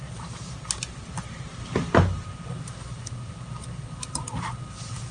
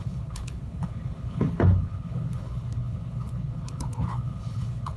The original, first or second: first